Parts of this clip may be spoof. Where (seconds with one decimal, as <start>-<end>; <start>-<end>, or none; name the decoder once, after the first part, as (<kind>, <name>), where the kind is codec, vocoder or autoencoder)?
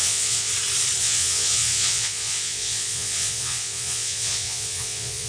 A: 0.0-0.5 (vocoder, Vocos); 1.0-5.3